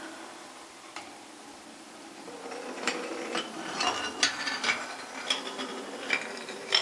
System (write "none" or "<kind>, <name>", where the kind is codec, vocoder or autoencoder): vocoder, BigVGAN v2